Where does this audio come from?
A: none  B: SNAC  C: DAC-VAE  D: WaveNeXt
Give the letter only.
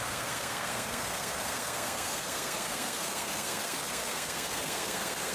B